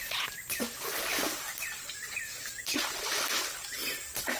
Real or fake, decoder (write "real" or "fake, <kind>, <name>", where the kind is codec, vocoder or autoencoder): real